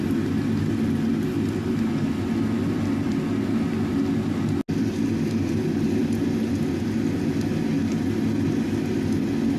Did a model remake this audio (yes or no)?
no